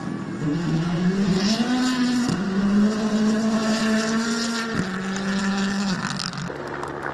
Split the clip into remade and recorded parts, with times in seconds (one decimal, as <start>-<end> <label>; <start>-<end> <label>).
0.0-5.4 recorded; 5.4-6.0 remade; 6.0-7.1 recorded